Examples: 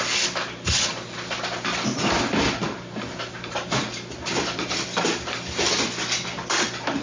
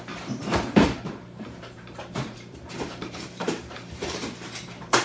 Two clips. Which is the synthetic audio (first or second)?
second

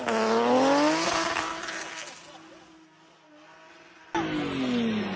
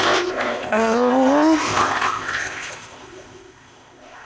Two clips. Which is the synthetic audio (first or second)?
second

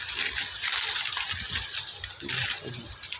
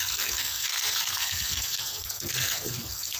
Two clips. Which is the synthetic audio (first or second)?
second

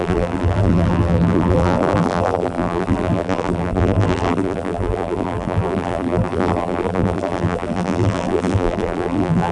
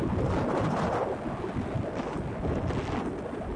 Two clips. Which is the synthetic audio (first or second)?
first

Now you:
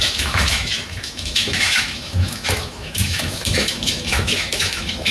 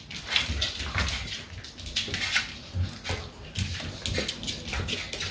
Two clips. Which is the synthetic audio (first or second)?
first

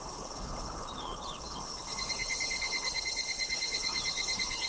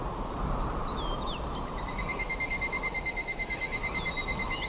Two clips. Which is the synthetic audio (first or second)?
first